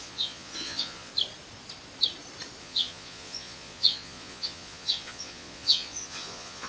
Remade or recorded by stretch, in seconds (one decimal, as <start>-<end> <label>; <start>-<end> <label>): 0.0-1.1 remade; 1.1-2.6 recorded; 2.6-6.7 remade